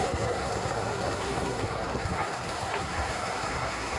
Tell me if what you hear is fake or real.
fake